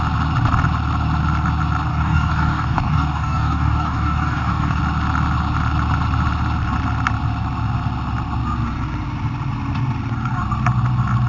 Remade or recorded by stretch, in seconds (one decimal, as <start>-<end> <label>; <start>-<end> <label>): 0.0-1.9 recorded; 1.9-4.8 remade; 4.8-11.3 recorded